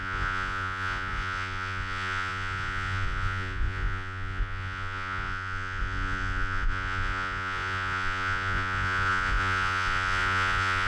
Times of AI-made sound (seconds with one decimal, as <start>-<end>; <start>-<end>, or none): 0.0-10.9